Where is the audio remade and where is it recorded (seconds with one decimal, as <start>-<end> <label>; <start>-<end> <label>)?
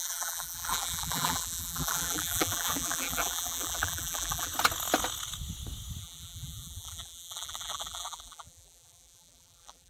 0.0-4.5 remade; 4.5-6.0 recorded; 6.0-9.9 remade